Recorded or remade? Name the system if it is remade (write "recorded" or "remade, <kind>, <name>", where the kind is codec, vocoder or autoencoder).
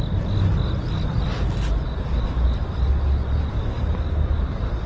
recorded